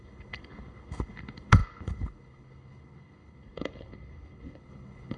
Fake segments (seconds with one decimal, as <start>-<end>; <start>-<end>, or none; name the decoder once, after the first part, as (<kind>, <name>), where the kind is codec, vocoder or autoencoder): 0.0-5.2 (codec, HILCodec)